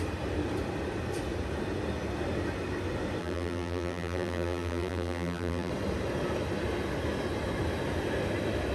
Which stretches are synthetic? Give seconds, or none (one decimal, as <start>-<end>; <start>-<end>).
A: 3.2-5.7